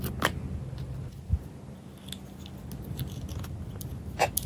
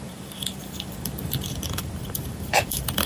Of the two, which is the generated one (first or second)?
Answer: second